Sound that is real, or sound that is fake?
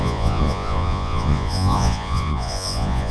fake